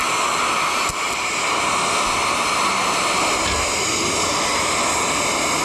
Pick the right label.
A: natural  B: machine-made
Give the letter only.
A